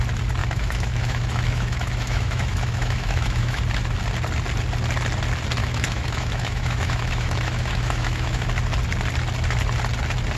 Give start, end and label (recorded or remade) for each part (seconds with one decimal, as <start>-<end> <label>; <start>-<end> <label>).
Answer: 0.0-0.4 recorded; 0.4-3.6 remade; 3.6-5.6 recorded; 5.6-8.5 remade; 8.5-10.4 recorded